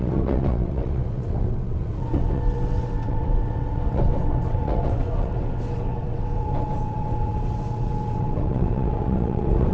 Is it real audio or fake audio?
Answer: fake